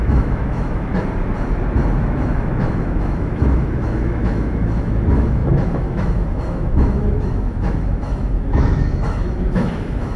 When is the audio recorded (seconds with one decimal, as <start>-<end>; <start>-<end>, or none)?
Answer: 0.9-2.0